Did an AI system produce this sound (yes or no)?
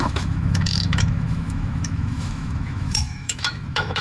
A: yes